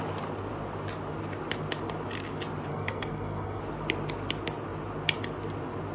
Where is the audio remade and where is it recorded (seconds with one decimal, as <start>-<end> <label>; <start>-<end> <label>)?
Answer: 0.0-2.7 recorded; 2.7-3.6 remade; 3.6-5.9 recorded